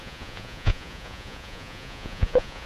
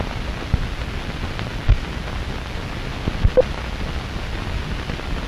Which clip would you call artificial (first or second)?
first